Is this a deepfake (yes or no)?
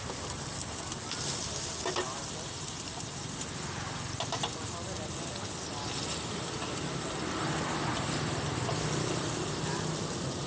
no